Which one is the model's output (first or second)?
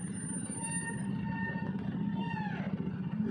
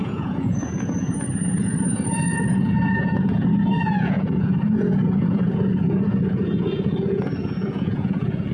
second